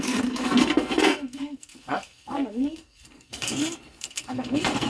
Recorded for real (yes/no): no